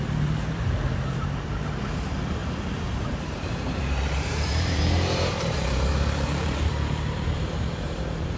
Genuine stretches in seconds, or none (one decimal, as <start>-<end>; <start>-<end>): 2.4-3.0